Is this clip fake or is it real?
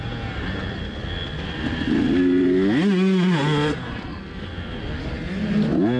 real